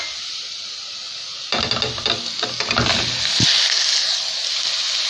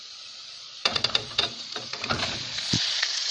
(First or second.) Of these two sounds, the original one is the first